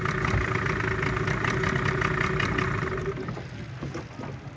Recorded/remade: recorded